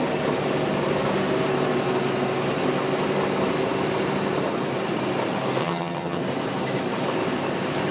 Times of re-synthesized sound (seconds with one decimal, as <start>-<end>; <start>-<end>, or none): 5.6-6.2